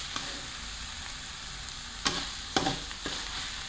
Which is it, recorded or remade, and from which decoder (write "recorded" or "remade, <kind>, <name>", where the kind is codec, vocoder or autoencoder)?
recorded